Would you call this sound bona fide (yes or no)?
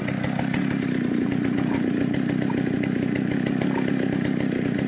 yes